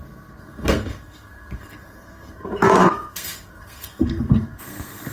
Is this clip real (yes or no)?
no